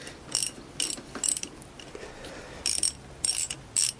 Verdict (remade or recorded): recorded